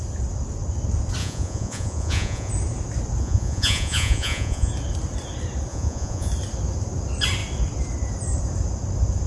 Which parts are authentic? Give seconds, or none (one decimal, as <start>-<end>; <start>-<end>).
0.0-1.2; 2.5-3.2; 4.7-5.7; 6.3-9.3